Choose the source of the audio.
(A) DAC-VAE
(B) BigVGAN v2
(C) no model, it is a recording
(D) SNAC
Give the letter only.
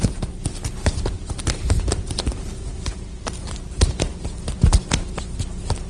C